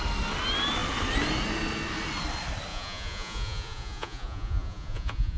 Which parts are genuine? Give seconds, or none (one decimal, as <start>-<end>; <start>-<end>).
0.0-2.7